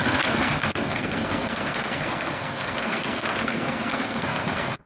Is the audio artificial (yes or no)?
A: yes